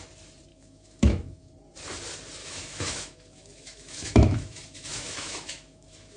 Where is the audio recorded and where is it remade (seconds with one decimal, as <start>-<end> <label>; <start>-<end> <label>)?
0.0-0.5 recorded; 0.5-1.5 remade; 1.5-2.4 recorded; 2.4-6.2 remade